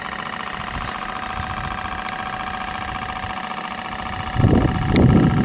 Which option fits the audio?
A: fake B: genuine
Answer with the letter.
B